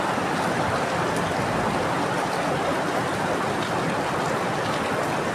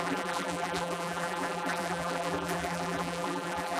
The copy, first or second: second